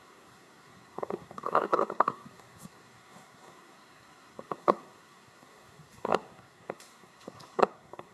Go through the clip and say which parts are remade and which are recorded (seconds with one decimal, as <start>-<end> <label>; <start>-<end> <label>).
0.0-8.1 remade